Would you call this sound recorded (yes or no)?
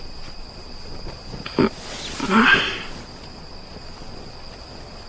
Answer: yes